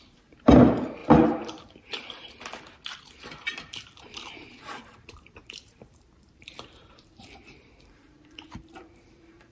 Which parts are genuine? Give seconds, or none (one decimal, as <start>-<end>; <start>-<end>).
1.0-3.0